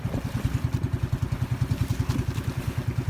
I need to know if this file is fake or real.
real